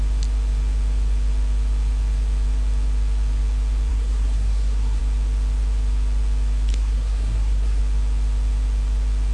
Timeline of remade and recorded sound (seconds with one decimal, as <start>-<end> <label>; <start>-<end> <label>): 0.0-3.9 recorded; 3.9-5.0 remade; 5.0-6.7 recorded; 6.7-7.8 remade; 7.8-9.3 recorded